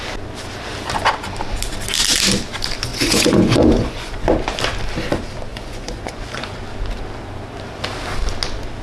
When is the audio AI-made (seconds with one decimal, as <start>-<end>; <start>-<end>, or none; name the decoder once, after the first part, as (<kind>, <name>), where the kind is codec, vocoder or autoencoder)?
2.9-4.2 (vocoder, Vocos); 5.5-6.6